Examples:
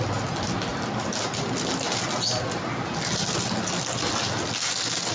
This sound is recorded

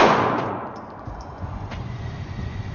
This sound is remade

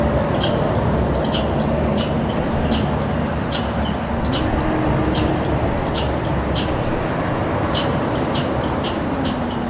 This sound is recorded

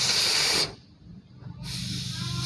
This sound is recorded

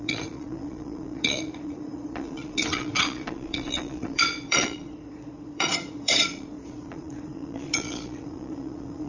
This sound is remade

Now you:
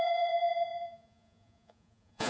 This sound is remade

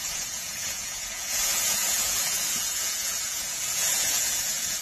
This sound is remade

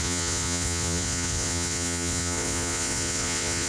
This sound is remade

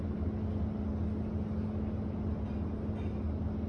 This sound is recorded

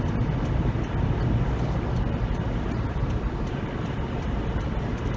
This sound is recorded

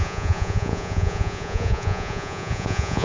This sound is remade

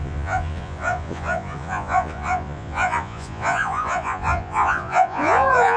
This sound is remade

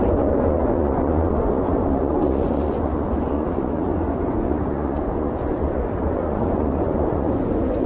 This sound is remade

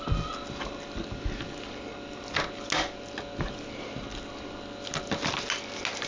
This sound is recorded